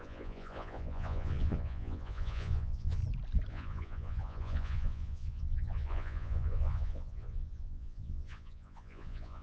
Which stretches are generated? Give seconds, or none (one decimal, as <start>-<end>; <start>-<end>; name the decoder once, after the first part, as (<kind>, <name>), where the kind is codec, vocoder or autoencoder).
0.0-3.0 (vocoder, Vocos); 3.5-9.4